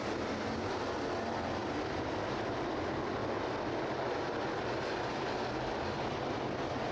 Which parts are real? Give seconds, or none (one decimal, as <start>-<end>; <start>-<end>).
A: 0.0-1.6; 2.1-3.2